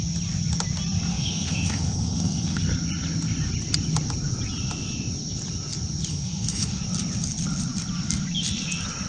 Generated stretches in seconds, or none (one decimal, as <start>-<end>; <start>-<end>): 1.1-2.6; 6.1-6.8